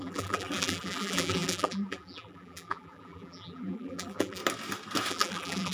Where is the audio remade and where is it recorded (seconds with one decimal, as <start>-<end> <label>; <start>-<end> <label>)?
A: 0.0-4.4 remade; 4.4-5.1 recorded; 5.1-5.7 remade

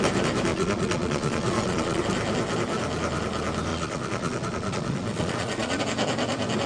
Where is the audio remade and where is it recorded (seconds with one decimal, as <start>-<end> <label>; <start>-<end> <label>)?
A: 0.0-0.5 recorded; 0.5-2.0 remade; 2.0-3.7 recorded; 3.7-5.8 remade; 5.8-6.7 recorded

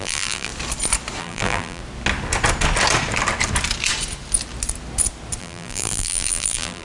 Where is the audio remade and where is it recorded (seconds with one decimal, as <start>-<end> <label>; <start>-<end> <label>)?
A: 0.0-0.5 remade; 0.5-1.2 recorded; 1.2-1.8 remade; 1.8-5.4 recorded; 5.4-6.8 remade

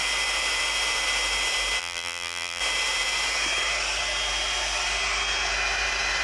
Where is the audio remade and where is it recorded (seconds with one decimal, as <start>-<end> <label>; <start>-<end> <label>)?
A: 0.0-1.8 recorded; 1.8-2.6 remade; 2.6-6.2 recorded

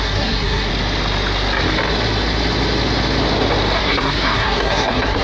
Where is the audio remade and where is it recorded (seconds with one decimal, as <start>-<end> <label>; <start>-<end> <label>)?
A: 0.0-0.7 remade; 0.7-3.8 recorded; 3.8-5.2 remade